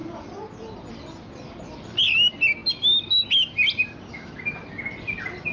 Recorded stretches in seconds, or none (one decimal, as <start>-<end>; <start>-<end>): 0.0-4.1; 4.6-5.5